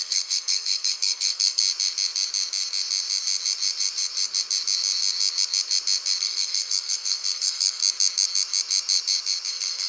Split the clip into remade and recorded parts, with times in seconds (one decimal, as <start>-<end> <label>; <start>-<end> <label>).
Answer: 0.0-1.6 remade; 1.6-6.2 recorded; 6.2-7.8 remade; 7.8-9.5 recorded; 9.5-9.9 remade